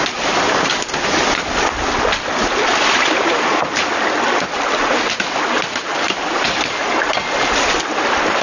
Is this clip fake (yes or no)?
no